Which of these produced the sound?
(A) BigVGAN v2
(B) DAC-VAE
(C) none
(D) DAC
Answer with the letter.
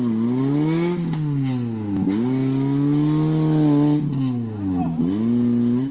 C